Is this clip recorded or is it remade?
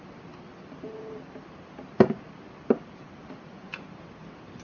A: recorded